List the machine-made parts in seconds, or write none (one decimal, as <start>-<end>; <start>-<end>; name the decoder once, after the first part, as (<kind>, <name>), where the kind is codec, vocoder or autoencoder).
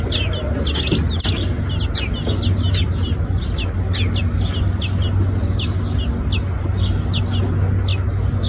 none